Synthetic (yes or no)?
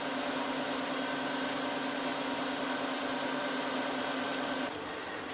no